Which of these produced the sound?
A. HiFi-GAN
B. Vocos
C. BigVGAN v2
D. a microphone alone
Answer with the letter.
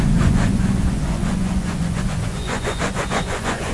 B